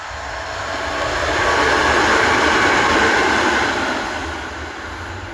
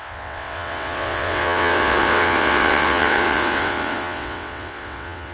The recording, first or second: first